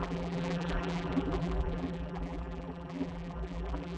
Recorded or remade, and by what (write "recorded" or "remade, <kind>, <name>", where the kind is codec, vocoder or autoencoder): remade, vocoder, BigVGAN v2